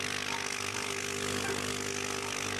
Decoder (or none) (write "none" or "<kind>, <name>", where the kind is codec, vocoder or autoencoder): none